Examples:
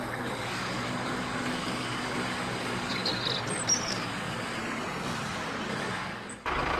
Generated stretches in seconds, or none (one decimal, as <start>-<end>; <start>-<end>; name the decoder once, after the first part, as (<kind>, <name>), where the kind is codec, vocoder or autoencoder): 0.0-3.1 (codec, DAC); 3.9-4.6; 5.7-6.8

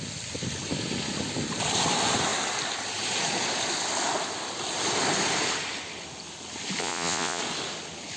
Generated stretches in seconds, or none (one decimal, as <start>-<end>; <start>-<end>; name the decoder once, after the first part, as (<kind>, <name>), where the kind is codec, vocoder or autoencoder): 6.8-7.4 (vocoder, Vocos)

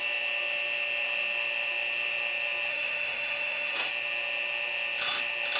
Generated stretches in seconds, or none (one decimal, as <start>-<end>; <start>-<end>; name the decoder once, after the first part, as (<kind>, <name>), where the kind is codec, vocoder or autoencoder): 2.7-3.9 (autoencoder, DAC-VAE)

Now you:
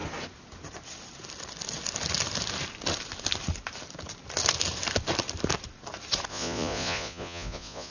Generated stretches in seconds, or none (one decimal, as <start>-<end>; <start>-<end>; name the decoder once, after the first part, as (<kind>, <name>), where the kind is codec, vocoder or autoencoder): 6.3-7.9 (vocoder, Vocos)

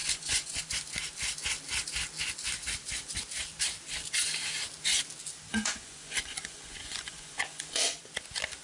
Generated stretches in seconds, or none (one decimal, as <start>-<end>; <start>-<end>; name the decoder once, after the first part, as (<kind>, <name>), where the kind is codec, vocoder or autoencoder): 0.0-0.6 (vocoder, Vocos); 5.5-8.0

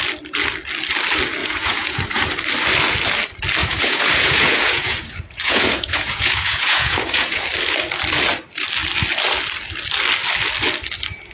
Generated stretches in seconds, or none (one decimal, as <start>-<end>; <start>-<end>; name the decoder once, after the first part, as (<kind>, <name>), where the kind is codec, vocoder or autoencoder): 1.4-2.3 (vocoder, Vocos); 3.6-7.4